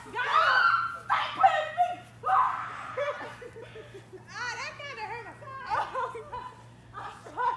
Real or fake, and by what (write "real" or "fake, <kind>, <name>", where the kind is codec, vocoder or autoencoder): real